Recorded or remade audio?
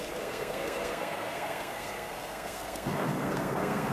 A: remade